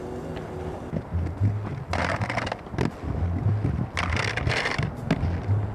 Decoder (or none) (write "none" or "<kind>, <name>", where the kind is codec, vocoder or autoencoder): none